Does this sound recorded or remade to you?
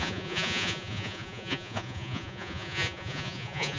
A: remade